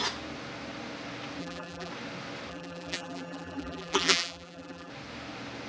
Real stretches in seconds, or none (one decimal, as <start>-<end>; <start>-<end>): 0.0-1.4; 1.9-2.5; 4.9-5.7